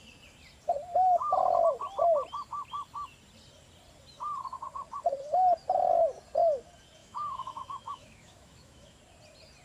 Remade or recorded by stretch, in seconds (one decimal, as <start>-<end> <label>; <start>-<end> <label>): 0.0-7.0 recorded; 7.0-9.0 remade; 9.0-9.6 recorded